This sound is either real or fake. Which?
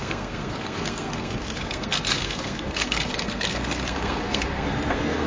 fake